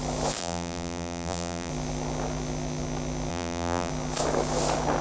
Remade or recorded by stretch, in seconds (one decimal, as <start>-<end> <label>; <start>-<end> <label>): 0.0-0.4 recorded; 0.4-1.7 remade; 1.7-3.3 recorded; 3.3-3.9 remade; 3.9-5.0 recorded